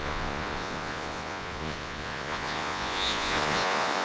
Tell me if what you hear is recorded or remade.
remade